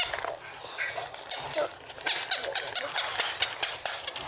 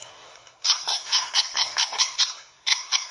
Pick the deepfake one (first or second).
second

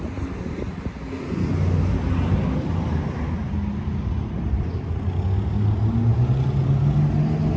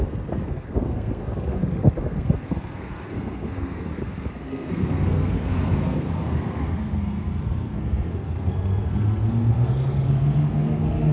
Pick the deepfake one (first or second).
second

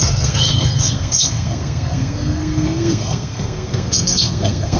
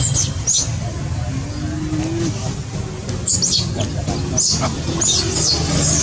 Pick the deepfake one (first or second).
first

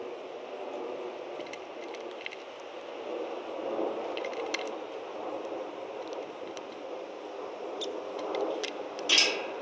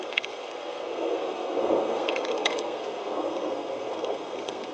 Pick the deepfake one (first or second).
second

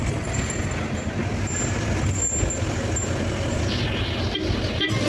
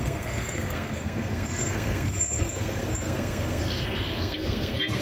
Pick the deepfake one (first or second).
second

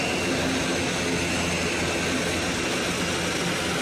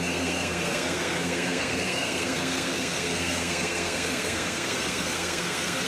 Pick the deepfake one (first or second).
second